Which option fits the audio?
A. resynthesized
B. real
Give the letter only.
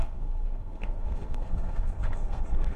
A